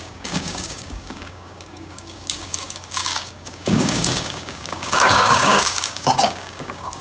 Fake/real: fake